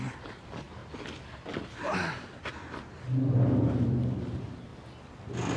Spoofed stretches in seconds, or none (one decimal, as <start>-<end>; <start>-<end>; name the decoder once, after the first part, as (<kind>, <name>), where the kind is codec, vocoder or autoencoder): none